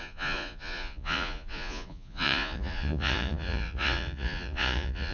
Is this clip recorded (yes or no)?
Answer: no